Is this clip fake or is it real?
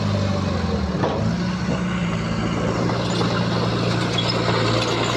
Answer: real